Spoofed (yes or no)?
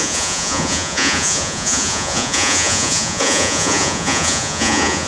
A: yes